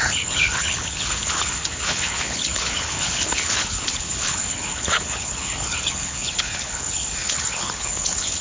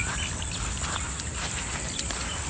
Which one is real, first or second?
second